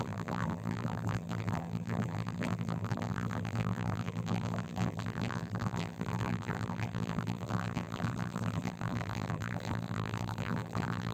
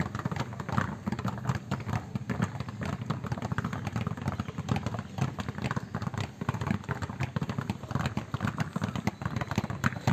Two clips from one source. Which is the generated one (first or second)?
first